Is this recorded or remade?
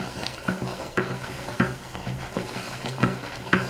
remade